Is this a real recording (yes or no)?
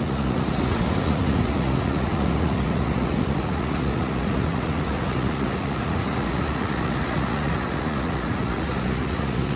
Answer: no